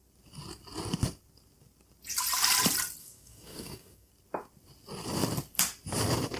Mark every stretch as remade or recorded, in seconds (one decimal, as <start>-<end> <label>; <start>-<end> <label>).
0.0-3.0 recorded; 3.0-4.1 remade; 4.1-6.4 recorded